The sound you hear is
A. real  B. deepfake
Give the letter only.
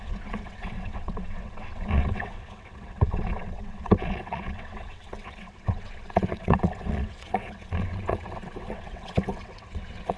B